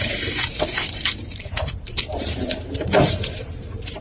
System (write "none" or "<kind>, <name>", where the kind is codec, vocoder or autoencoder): vocoder, BigVGAN v2